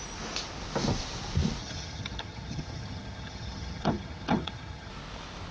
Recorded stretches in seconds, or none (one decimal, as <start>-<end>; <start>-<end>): 0.0-1.6; 4.9-5.5